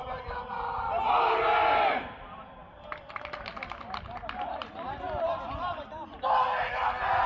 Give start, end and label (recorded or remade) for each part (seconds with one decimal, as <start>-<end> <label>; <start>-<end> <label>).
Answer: 0.0-7.3 recorded